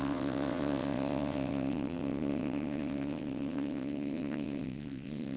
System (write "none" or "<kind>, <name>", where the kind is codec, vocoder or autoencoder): vocoder, WaveNeXt